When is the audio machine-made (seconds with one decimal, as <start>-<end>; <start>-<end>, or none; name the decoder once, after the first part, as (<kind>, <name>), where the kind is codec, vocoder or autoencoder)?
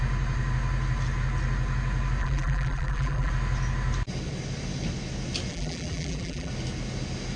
2.2-3.3 (vocoder, BigVGAN v2); 5.5-6.5